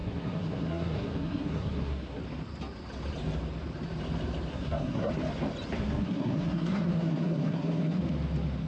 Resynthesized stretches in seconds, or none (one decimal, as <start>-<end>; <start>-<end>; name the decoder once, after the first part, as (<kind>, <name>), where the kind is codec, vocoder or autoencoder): 0.0-2.2 (codec, SNAC); 4.5-5.1; 5.8-8.0